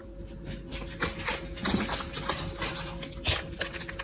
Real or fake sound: real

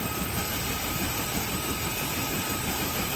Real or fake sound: fake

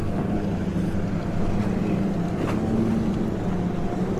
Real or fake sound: real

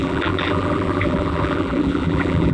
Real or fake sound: fake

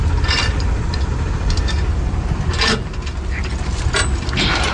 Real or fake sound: real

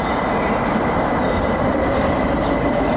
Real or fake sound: fake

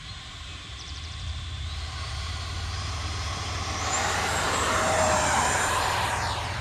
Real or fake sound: fake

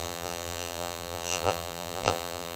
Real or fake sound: fake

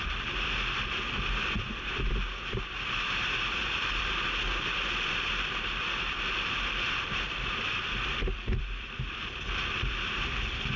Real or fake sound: fake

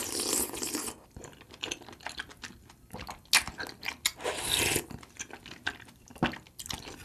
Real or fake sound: real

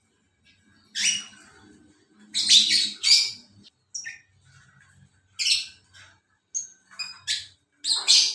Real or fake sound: real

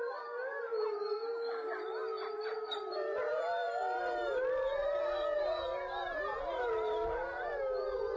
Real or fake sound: fake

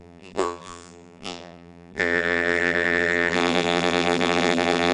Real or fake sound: fake